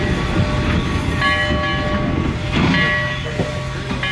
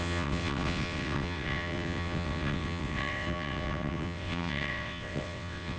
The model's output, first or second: second